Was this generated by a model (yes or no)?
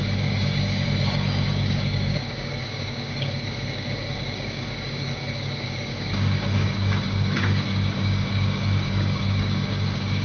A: yes